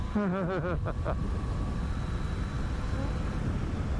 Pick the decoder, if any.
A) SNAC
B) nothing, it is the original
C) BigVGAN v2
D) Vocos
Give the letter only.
B